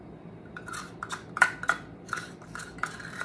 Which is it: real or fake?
fake